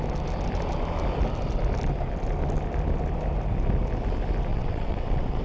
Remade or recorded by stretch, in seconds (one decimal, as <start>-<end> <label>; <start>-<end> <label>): 0.0-4.5 recorded; 4.5-5.4 remade